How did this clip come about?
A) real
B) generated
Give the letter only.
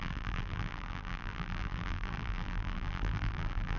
B